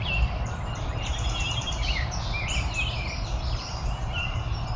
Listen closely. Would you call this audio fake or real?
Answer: real